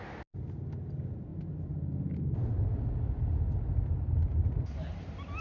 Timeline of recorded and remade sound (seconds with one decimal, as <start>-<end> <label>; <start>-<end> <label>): 0.0-5.4 recorded